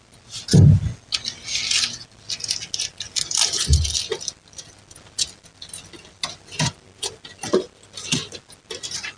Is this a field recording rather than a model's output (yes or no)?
yes